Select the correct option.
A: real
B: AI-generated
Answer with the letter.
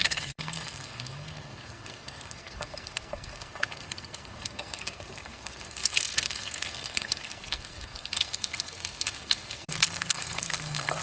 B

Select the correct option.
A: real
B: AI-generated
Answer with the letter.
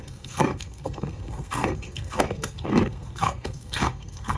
B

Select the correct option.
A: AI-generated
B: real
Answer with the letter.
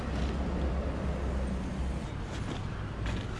B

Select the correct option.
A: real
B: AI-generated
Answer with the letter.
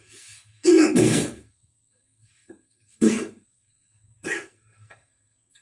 B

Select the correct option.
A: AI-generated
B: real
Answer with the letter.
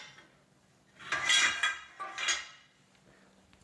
B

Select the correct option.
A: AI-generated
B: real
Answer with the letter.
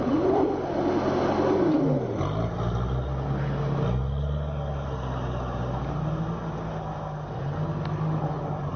B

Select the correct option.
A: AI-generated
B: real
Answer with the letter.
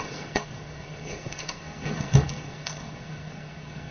A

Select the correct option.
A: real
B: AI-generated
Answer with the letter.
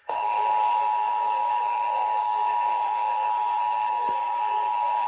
B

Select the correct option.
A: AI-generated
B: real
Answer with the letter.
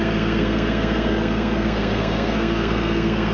A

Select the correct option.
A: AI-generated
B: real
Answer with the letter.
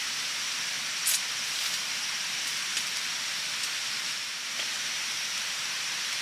B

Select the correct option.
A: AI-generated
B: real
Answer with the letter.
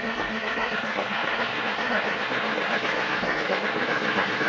A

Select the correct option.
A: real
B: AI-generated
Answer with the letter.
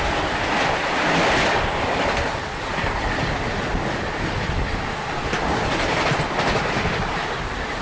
A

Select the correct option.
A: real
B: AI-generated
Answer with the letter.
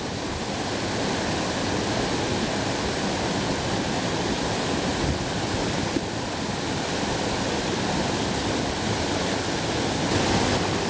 A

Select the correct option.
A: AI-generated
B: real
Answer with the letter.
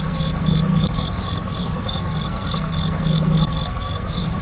A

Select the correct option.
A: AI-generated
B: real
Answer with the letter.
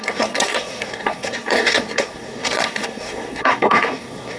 A